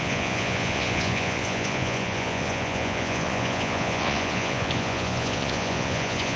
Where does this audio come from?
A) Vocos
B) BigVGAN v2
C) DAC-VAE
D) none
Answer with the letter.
A